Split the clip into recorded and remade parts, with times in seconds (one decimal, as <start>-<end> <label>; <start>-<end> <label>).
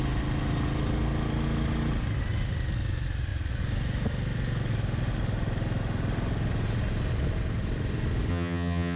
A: 0.0-8.3 recorded; 8.3-9.0 remade